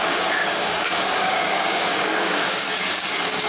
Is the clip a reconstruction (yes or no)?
yes